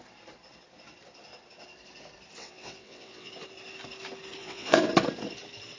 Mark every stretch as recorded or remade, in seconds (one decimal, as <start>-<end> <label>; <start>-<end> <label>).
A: 0.0-2.4 recorded; 2.4-3.3 remade; 3.3-4.4 recorded; 4.4-4.9 remade; 4.9-5.8 recorded